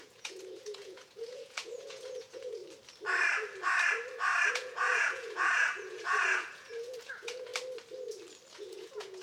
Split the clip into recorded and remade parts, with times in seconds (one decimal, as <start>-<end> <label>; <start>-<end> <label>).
0.0-2.6 remade; 2.6-4.5 recorded; 4.5-7.5 remade; 7.5-8.5 recorded; 8.5-9.2 remade